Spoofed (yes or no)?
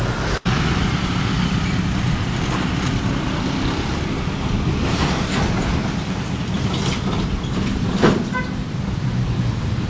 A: yes